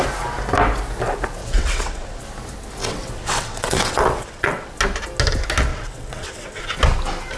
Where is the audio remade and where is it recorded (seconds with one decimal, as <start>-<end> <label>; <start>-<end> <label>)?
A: 0.0-1.4 recorded; 1.4-2.2 remade; 2.2-2.8 recorded; 2.8-4.7 remade; 4.7-5.7 recorded; 5.7-6.6 remade; 6.6-7.4 recorded